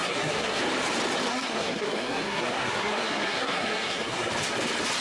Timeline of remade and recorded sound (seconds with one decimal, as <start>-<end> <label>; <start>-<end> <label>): 0.0-0.6 remade; 0.6-1.3 recorded; 1.3-4.3 remade; 4.3-5.0 recorded